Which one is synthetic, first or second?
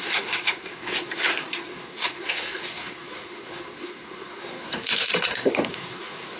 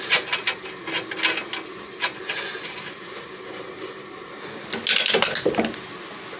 first